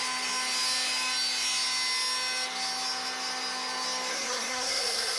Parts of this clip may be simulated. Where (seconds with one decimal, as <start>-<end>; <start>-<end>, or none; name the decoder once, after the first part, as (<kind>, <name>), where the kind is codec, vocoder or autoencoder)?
4.1-5.2 (codec, SNAC)